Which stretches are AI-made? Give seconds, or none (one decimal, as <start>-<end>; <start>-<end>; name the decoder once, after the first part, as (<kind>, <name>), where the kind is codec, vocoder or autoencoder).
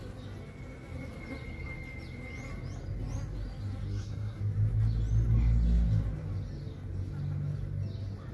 3.9-4.4 (codec, SNAC)